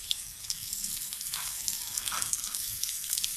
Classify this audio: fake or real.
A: fake